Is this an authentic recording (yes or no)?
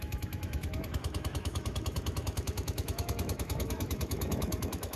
no